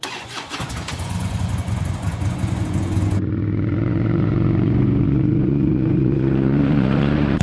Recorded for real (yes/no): no